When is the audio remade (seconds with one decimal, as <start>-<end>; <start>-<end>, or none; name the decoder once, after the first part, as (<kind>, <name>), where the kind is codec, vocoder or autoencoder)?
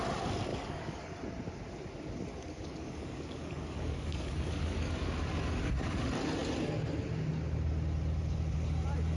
0.5-1.1 (codec, DAC); 2.3-4.9; 5.4-6.0